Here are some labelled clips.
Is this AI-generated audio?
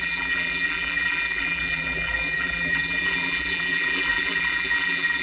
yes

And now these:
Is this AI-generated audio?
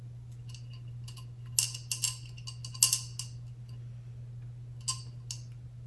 no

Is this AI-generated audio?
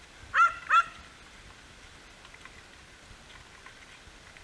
no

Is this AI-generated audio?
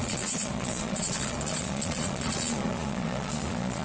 yes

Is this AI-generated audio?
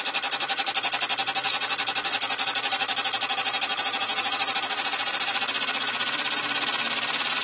no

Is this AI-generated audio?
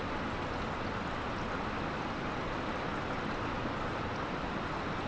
no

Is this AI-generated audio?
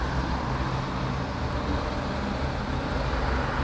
no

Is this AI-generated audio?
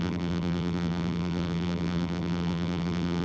yes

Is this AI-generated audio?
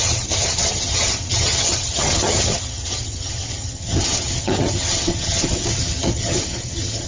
yes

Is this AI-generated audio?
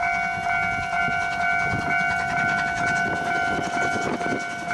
no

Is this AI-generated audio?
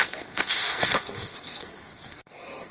yes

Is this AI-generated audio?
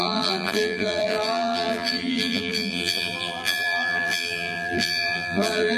yes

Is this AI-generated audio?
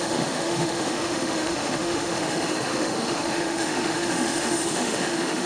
yes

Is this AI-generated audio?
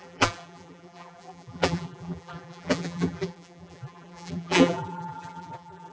yes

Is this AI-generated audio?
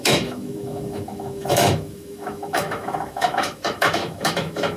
yes